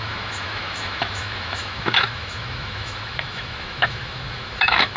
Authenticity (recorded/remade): remade